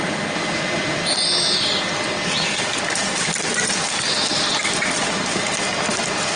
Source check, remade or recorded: recorded